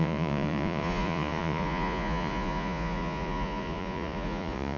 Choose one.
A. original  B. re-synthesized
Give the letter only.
B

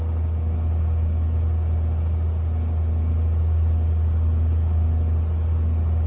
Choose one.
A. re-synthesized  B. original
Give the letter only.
B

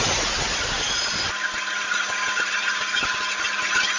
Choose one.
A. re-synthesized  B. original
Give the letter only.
B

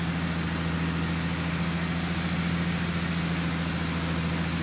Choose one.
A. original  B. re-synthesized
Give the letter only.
A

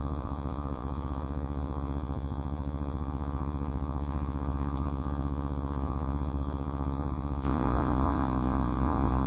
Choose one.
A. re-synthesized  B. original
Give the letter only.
A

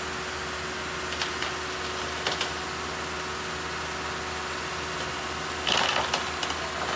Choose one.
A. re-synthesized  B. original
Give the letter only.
B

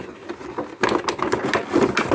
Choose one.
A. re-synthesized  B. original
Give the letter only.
B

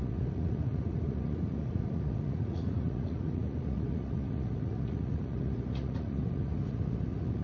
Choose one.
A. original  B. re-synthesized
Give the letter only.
B